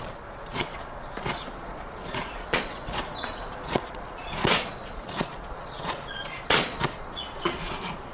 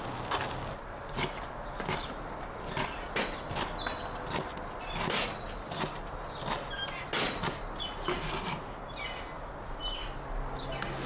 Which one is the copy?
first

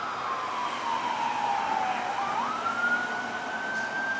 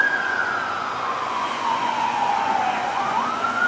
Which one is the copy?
second